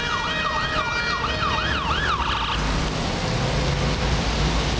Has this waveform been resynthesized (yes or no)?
no